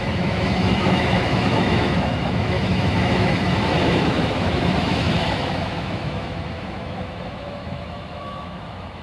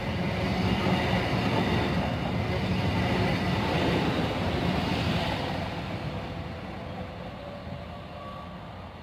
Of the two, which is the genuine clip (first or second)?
second